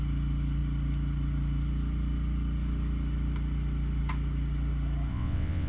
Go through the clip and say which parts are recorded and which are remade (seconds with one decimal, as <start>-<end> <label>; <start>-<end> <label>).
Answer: 0.0-5.1 recorded; 5.1-5.7 remade